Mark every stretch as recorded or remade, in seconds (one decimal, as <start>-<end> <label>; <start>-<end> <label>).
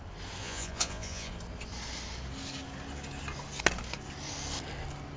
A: 0.0-0.4 recorded; 0.4-1.3 remade; 1.3-5.2 recorded